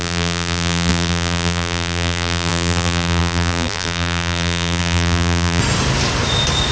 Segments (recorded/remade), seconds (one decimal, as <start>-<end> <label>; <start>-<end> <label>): 0.0-5.6 remade; 5.6-6.7 recorded